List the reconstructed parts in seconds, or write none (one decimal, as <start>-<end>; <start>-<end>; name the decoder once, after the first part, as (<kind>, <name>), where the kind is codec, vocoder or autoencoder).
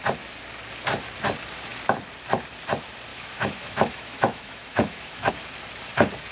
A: 3.1-5.3 (autoencoder, DAC-VAE)